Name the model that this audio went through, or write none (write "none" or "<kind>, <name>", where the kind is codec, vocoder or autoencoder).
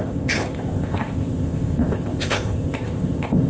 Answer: codec, ZipCodec